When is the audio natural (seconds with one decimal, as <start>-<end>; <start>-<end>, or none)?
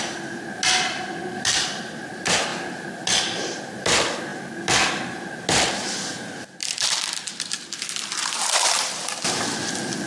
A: 0.0-10.1